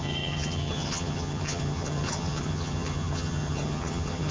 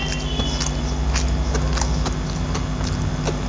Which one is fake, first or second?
first